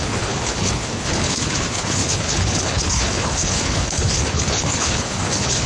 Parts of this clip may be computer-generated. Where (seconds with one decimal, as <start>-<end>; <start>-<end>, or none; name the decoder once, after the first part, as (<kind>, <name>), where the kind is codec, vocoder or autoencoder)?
0.0-5.7 (codec, HILCodec)